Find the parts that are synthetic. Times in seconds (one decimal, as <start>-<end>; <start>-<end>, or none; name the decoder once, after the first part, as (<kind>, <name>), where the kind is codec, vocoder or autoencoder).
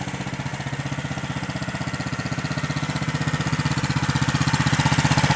none